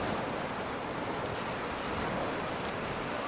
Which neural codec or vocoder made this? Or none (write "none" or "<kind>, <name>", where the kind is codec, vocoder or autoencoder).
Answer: none